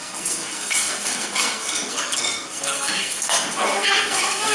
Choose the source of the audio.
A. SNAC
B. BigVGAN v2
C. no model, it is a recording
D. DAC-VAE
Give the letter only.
A